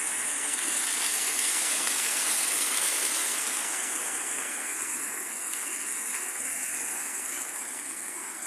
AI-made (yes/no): yes